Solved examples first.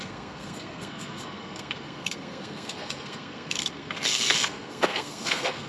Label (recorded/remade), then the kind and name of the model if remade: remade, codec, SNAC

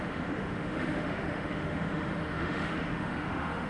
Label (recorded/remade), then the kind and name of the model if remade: remade, autoencoder, DAC-VAE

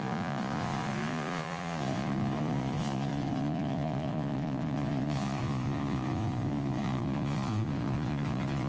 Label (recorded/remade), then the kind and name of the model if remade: remade, vocoder, Vocos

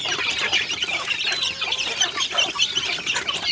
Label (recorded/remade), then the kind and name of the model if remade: recorded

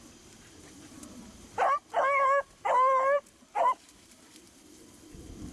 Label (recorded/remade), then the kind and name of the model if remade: recorded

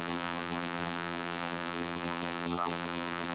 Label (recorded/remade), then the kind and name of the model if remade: remade, vocoder, BigVGAN v2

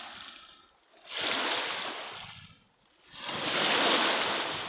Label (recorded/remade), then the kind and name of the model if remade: recorded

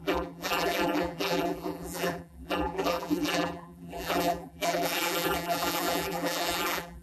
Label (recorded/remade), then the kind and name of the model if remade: remade, vocoder, BigVGAN v2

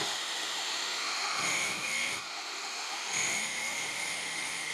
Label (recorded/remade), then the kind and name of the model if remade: remade, autoencoder, DAC-VAE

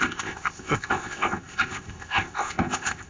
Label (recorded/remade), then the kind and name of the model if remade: remade, codec, ZipCodec